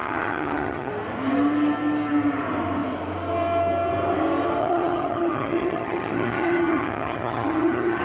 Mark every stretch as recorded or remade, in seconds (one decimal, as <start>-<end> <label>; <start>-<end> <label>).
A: 0.0-0.9 remade; 0.9-4.6 recorded; 4.6-8.0 remade